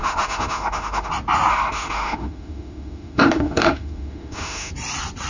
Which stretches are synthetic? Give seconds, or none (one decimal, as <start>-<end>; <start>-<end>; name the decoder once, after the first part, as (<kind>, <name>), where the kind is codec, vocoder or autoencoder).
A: 0.0-1.1 (autoencoder, DAC-VAE); 1.5-4.7